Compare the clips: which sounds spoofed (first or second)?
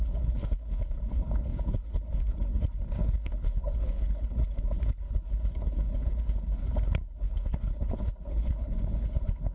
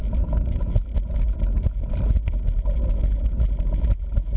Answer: first